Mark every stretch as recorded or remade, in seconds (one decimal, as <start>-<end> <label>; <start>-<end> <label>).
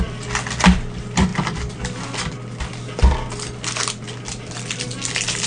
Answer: 0.0-5.5 recorded